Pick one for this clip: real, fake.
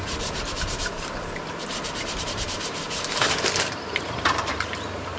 fake